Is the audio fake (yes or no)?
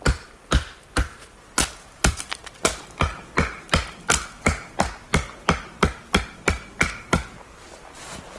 no